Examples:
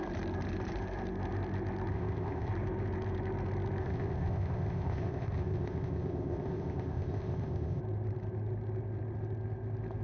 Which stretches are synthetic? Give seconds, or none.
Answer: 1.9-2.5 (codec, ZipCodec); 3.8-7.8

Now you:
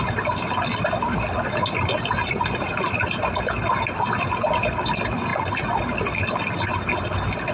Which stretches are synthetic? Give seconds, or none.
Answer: none